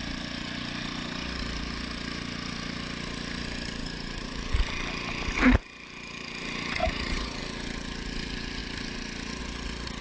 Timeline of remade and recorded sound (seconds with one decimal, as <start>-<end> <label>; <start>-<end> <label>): 0.0-3.8 recorded; 3.8-4.5 remade; 4.5-6.8 recorded; 6.8-7.4 remade; 7.4-10.0 recorded